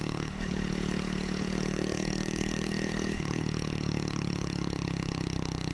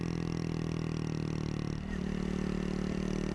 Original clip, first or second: second